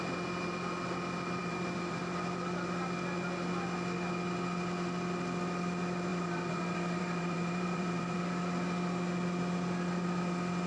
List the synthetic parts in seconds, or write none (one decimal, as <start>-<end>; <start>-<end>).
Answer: 1.4-2.0; 6.1-8.2